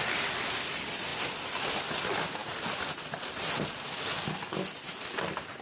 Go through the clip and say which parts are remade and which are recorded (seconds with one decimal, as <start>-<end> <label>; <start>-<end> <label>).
0.0-5.6 recorded